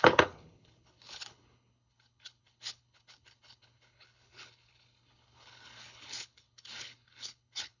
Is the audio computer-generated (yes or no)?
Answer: yes